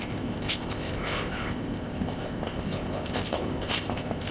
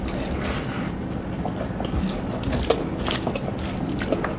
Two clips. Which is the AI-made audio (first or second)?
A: first